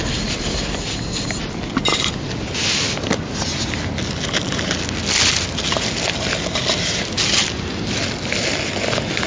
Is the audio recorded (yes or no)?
yes